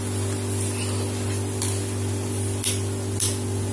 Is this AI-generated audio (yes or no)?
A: no